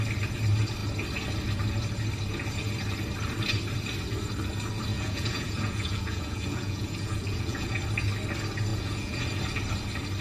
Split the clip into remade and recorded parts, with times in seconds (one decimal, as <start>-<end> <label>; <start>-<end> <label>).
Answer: 0.0-4.9 recorded; 4.9-7.8 remade; 7.8-8.7 recorded; 8.7-9.4 remade; 9.4-10.2 recorded